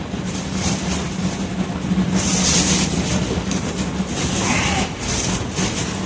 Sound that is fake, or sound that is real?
real